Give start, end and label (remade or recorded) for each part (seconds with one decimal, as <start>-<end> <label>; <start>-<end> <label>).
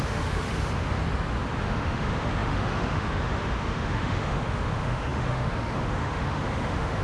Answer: 0.0-1.0 remade; 1.0-1.6 recorded; 1.6-7.0 remade